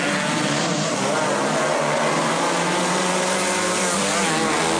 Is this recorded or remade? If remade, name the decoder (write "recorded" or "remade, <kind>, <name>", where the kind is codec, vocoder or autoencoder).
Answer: recorded